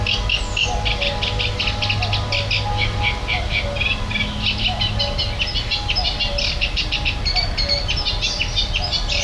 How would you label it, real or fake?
real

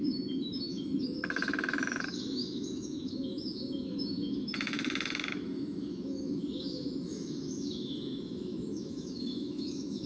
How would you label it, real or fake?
fake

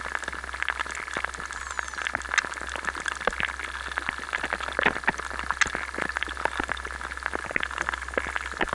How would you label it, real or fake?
real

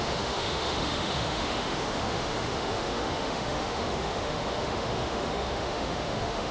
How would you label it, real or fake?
fake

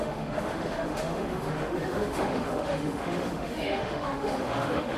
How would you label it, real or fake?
fake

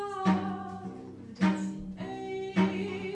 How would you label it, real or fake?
real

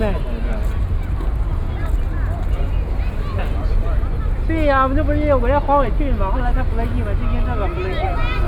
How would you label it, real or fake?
real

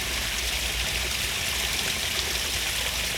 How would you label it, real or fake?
real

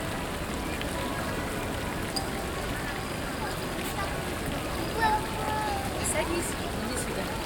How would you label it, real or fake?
real